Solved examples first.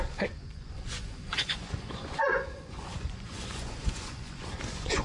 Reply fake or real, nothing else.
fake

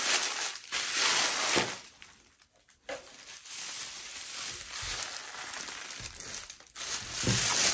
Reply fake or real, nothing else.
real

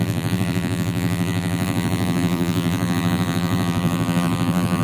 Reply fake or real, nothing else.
fake